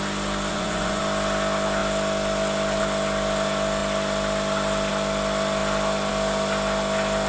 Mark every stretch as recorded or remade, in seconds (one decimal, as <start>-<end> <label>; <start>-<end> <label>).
0.0-0.5 recorded; 0.5-1.0 remade; 1.0-7.3 recorded